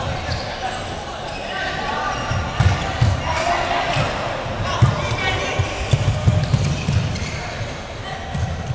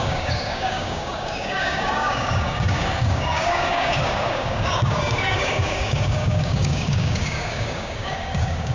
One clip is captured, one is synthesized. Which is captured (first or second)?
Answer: first